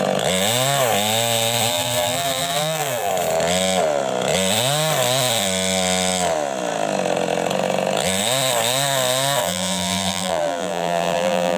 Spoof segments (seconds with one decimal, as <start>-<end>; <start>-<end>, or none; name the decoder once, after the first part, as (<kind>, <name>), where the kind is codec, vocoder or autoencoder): 1.7-3.1 (vocoder, BigVGAN v2); 9.4-11.6